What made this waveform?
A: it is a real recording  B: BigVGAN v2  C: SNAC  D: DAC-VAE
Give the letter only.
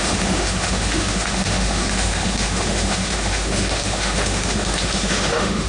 D